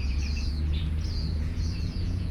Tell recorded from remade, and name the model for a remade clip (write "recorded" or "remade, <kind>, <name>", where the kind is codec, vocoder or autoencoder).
remade, vocoder, Vocos